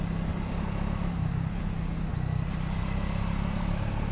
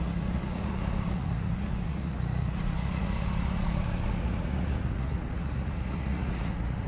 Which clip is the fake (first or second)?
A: second